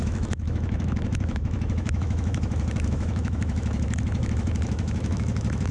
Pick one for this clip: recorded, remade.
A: remade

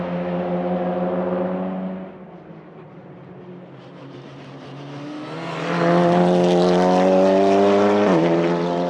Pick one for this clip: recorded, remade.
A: recorded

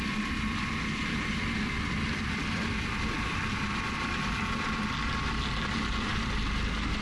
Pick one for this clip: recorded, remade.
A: recorded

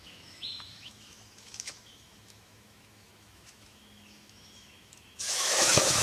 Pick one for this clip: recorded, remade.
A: remade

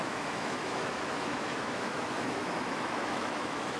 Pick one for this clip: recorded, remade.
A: remade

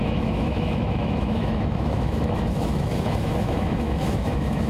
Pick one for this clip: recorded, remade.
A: remade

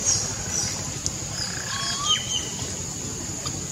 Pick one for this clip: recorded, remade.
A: recorded